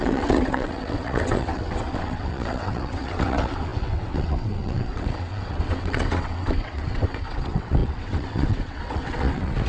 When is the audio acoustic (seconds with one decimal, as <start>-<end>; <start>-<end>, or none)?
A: none